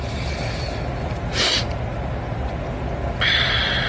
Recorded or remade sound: recorded